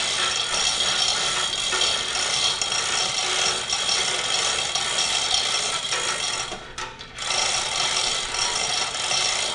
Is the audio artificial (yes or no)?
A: no